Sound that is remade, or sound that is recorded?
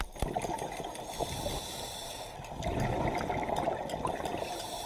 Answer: recorded